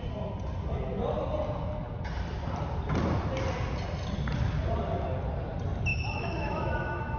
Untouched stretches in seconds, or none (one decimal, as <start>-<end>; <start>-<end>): 0.0-5.9